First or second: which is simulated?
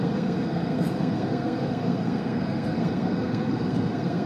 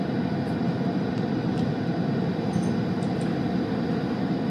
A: first